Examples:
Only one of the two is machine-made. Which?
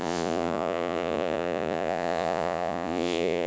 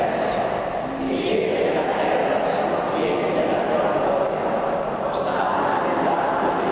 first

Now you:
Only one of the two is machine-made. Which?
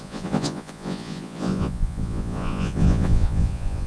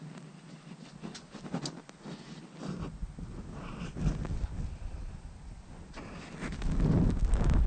first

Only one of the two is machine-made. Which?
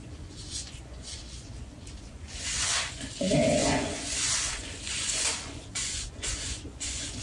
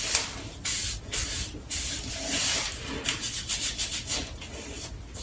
first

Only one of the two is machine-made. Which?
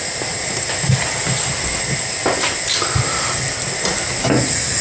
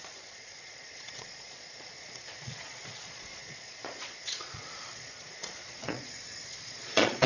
second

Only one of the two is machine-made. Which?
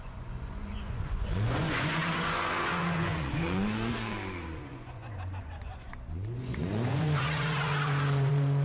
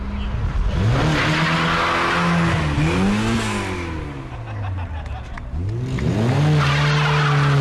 first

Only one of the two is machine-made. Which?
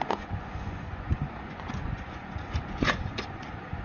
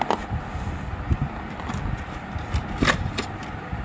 first